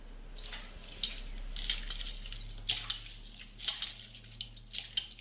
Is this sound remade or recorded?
recorded